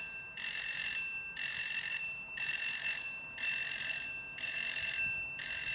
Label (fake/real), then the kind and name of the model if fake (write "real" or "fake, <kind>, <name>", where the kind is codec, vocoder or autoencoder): real